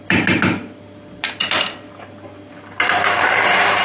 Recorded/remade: remade